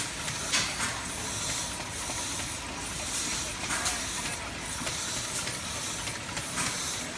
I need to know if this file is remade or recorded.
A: recorded